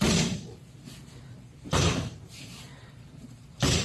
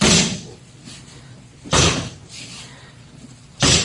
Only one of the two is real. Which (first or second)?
second